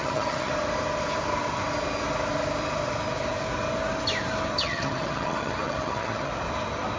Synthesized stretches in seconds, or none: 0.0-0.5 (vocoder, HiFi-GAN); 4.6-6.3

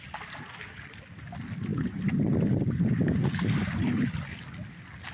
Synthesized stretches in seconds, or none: none